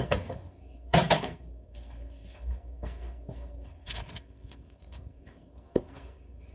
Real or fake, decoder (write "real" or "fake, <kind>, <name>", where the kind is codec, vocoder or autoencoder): fake, codec, SNAC